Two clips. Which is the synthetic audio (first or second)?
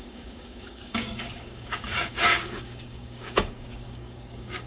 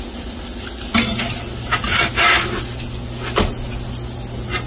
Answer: first